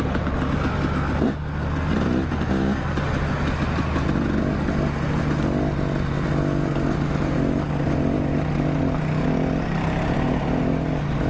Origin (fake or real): real